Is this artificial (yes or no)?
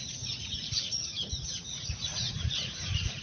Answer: yes